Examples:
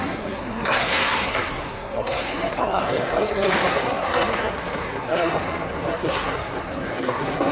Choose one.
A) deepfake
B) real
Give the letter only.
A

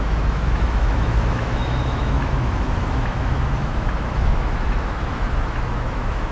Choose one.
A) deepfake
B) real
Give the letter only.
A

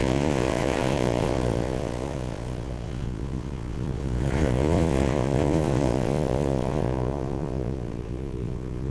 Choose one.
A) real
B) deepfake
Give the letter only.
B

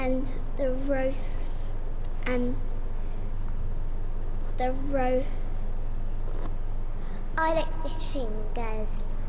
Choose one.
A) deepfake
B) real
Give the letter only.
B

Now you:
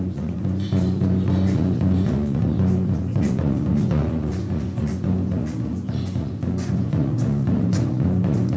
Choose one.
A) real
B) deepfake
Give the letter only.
B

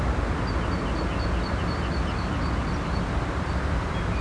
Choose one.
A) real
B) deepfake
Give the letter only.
A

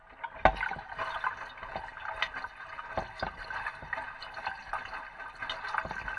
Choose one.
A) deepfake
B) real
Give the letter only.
B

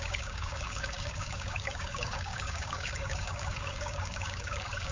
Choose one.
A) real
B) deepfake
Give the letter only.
B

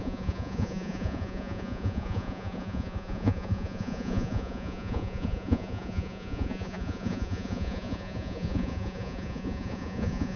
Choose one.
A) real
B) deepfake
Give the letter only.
B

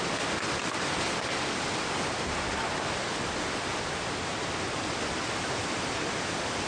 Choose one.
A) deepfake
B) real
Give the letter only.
B